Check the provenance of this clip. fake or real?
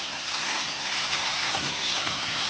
fake